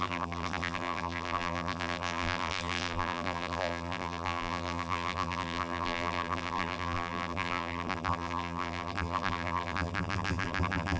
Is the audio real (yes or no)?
no